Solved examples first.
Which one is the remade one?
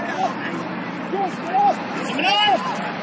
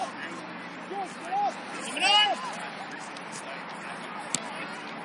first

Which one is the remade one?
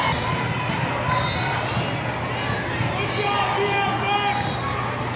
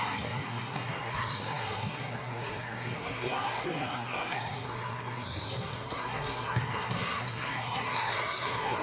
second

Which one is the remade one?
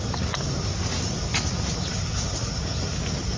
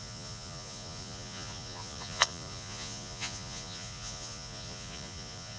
second